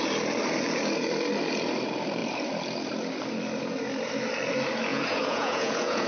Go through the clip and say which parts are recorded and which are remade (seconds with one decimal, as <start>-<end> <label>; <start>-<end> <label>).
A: 0.0-4.9 recorded; 4.9-6.1 remade